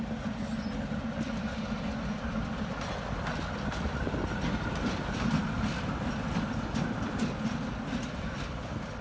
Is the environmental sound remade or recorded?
recorded